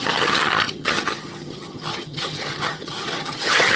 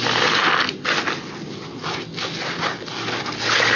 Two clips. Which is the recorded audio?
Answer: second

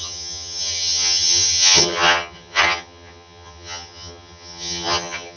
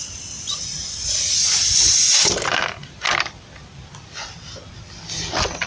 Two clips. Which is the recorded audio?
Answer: second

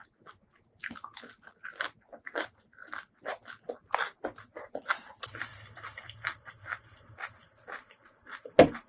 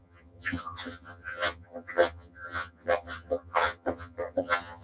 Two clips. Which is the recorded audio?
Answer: first